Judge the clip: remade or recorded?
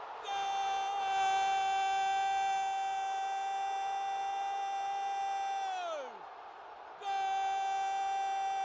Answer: recorded